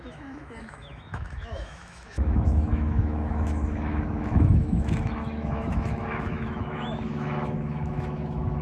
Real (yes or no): no